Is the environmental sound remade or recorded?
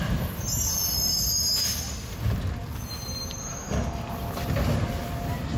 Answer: recorded